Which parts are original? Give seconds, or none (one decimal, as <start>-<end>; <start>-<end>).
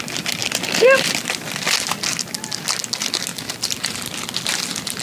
0.0-3.3; 4.2-5.0